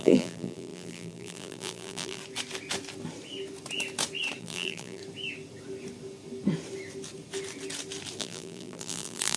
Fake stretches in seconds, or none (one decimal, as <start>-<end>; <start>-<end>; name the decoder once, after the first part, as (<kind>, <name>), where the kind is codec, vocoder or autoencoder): 0.0-2.2 (vocoder, BigVGAN v2); 4.4-5.0; 8.2-9.4